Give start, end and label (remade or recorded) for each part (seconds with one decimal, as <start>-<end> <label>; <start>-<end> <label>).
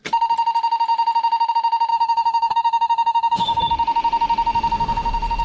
0.0-1.9 recorded; 1.9-3.6 remade; 3.6-5.4 recorded